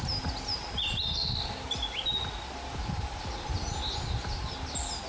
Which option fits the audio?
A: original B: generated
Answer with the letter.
A